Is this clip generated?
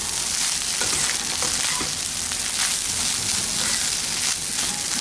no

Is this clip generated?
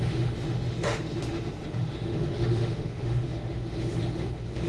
yes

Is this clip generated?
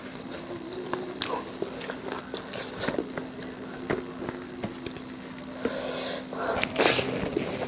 no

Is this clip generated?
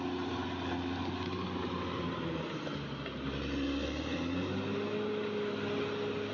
no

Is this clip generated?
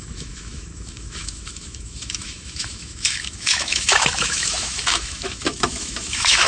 yes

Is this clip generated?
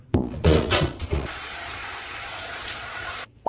yes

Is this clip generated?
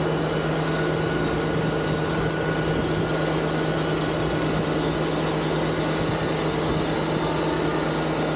no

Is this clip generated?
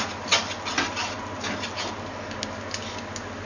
no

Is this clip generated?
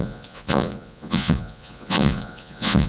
yes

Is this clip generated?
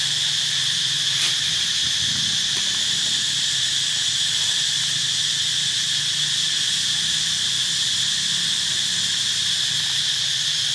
no